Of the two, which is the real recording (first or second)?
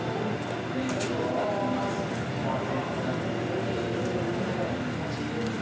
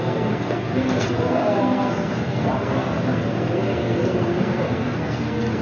first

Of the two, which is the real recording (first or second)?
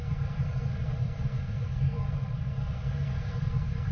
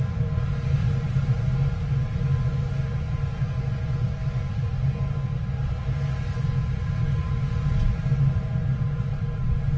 second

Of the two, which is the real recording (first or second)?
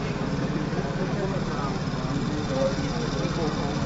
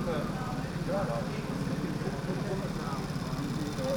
first